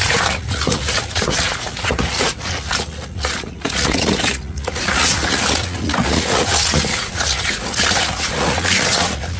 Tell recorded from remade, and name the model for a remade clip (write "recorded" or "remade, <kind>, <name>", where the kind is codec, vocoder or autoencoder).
remade, vocoder, Vocos